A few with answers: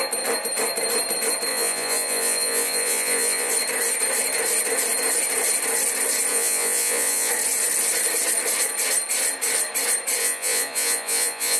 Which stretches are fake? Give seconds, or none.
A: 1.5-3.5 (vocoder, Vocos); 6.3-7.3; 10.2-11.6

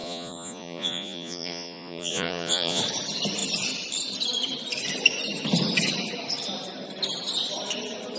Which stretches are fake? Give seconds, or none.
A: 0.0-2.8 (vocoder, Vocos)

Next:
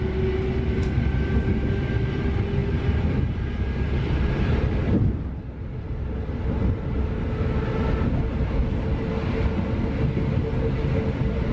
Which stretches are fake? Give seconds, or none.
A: none

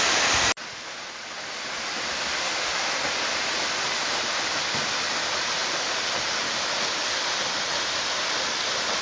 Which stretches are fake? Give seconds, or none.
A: none

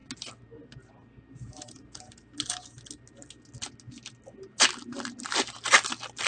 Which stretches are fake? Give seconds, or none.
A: none